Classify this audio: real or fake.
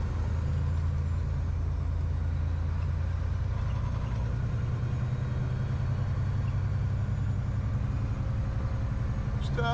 real